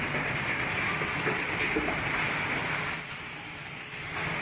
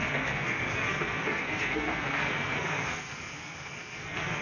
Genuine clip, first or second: first